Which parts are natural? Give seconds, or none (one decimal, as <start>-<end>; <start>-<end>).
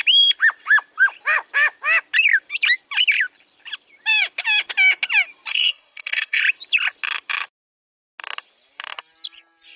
0.0-5.5; 6.4-9.8